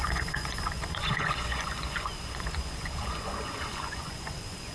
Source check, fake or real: fake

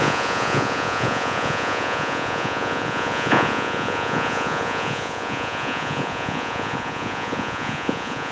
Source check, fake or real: fake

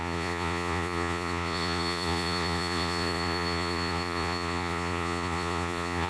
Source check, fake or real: fake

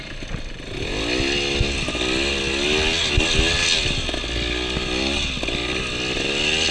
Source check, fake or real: real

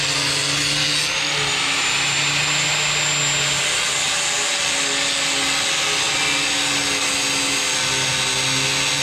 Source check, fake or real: real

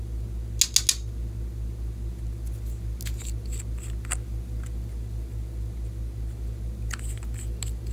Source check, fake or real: real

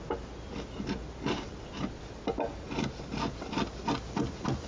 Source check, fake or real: real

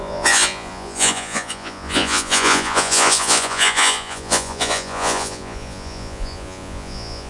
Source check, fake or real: fake